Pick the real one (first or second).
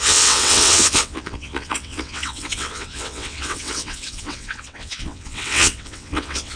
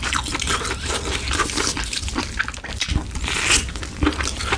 second